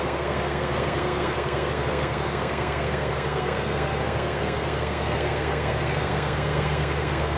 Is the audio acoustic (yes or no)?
no